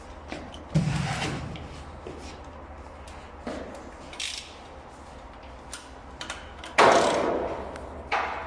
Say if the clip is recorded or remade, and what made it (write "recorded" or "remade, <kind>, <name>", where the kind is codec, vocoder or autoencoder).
recorded